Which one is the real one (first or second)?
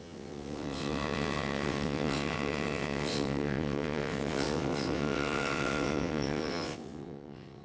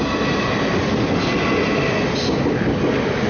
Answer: second